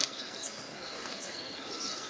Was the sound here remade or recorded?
remade